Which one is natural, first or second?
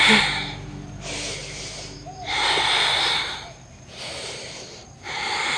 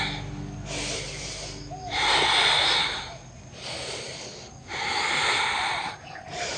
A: second